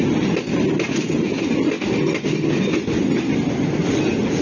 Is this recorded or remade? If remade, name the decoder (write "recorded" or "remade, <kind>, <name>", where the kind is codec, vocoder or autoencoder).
recorded